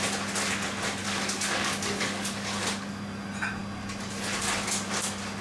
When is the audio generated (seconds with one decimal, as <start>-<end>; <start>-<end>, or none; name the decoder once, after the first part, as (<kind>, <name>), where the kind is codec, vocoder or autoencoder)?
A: 1.0-3.0 (codec, DAC)

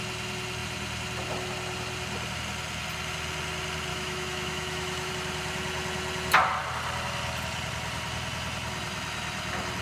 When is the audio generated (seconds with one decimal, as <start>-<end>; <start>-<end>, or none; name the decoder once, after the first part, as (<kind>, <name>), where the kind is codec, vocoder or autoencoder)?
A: 3.9-5.1 (autoencoder, DAC-VAE)

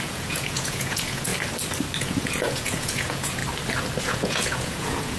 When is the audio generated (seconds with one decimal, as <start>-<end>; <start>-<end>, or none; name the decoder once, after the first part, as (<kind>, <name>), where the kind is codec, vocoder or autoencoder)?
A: 0.0-1.3 (vocoder, Vocos); 2.0-3.4; 4.0-5.2